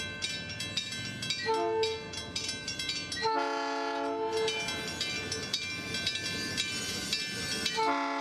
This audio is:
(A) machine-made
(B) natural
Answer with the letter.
B